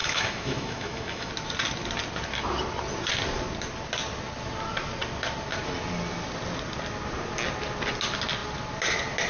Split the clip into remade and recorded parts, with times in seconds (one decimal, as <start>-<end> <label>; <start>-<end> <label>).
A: 0.0-1.3 remade; 1.3-9.3 recorded